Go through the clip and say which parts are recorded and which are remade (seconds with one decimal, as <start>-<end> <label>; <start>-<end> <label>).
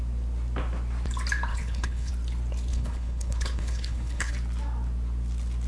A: 0.0-1.5 recorded; 1.5-2.1 remade; 2.1-2.7 recorded; 2.7-4.3 remade; 4.3-5.7 recorded